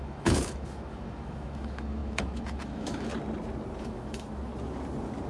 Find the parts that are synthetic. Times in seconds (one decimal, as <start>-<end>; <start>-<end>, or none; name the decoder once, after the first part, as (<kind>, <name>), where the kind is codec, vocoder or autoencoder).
0.0-3.1 (autoencoder, DAC-VAE); 3.8-4.5